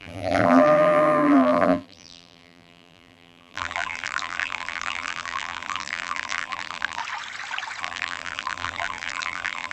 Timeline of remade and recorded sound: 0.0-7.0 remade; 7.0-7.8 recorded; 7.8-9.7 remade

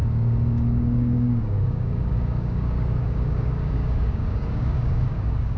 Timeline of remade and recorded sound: 0.0-5.6 remade

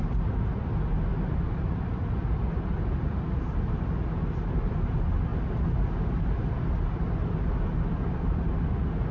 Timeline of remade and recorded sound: 0.0-9.1 recorded

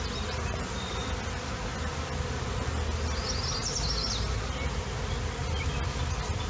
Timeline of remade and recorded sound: 0.0-6.5 recorded

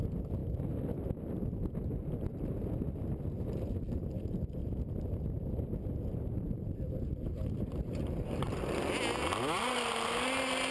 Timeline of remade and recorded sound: 0.0-6.1 recorded; 6.1-7.1 remade; 7.1-7.8 recorded; 7.8-8.5 remade; 8.5-10.7 recorded

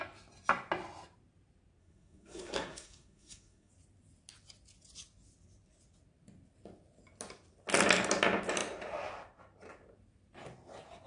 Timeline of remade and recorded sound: 0.0-1.8 recorded; 1.8-3.7 remade; 3.7-11.1 recorded

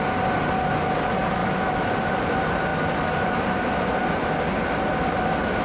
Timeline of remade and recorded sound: 0.0-1.4 recorded; 1.4-1.9 remade; 1.9-5.6 recorded